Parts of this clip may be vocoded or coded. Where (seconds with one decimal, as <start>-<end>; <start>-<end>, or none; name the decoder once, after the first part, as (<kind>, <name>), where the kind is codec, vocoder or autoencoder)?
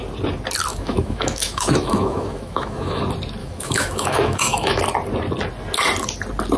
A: 0.7-3.0 (autoencoder, DAC-VAE); 3.4-4.8